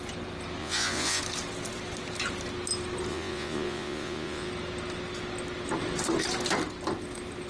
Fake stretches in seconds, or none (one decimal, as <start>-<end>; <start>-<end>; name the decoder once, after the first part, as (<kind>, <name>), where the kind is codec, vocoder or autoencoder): 0.6-1.2 (vocoder, Vocos); 3.1-4.5